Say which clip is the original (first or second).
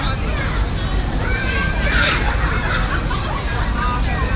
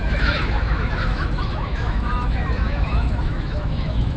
first